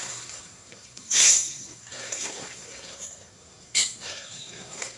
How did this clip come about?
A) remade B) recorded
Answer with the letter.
A